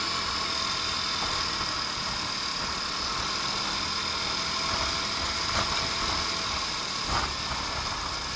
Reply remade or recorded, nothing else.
recorded